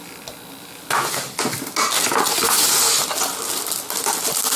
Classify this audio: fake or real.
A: real